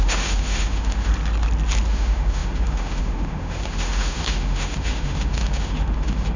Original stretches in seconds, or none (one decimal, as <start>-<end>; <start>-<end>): 1.1-1.9